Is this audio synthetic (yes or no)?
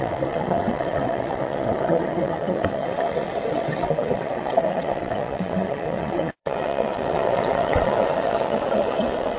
yes